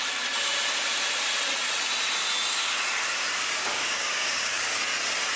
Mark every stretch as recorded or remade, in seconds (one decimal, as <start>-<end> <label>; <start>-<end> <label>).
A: 0.0-3.4 recorded; 3.4-4.8 remade; 4.8-5.4 recorded